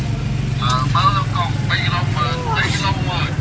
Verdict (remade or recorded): recorded